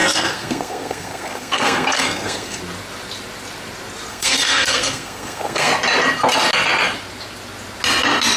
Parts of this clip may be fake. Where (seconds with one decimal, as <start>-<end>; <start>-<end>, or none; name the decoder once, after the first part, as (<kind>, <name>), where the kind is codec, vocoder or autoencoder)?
0.0-2.6 (codec, SNAC); 4.1-5.7